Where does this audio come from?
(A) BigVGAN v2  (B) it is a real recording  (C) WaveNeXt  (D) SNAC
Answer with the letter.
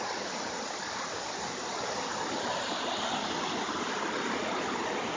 B